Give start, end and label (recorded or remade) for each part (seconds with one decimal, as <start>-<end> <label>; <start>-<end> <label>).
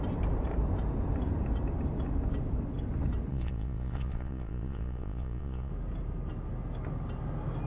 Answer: 0.0-3.3 recorded; 3.3-5.7 remade; 5.7-7.7 recorded